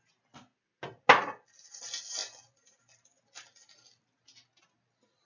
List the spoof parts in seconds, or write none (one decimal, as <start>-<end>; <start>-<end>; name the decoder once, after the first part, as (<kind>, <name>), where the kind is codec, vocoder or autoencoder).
none